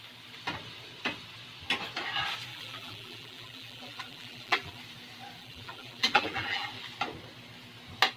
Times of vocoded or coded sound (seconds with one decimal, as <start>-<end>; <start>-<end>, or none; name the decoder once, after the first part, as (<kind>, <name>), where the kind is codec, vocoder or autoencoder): 2.5-4.8 (vocoder, BigVGAN v2); 5.4-6.7